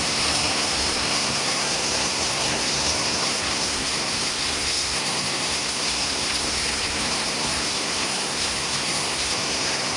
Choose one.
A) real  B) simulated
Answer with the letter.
B